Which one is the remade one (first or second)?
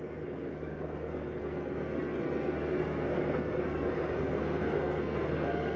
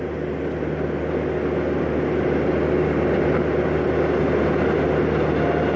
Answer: first